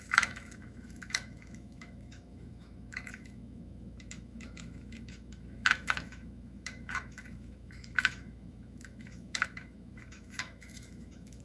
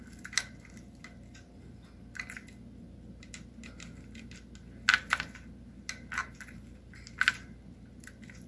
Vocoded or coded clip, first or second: first